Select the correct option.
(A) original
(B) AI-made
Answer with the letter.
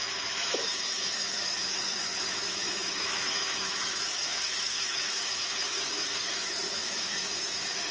B